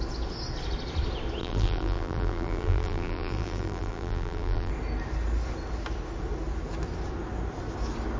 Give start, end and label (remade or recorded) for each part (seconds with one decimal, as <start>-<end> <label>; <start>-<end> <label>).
0.0-1.4 recorded; 1.4-4.7 remade; 4.7-8.2 recorded